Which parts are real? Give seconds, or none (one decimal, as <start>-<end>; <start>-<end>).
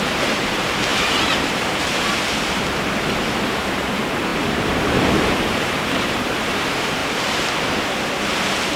7.0-8.2